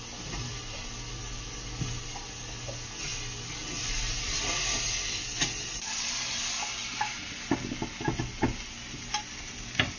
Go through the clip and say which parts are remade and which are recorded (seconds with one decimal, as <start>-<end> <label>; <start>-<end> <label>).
0.0-10.0 recorded